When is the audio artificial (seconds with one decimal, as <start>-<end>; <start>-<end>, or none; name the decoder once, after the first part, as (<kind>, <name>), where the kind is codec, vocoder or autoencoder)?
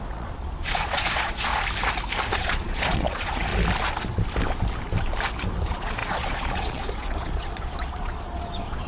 0.0-1.5 (vocoder, Vocos); 2.3-3.5; 5.6-8.9